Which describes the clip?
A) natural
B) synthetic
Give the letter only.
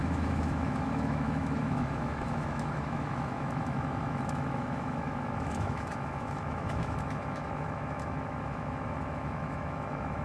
B